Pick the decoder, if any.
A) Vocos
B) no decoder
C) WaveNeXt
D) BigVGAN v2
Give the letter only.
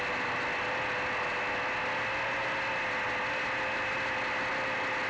B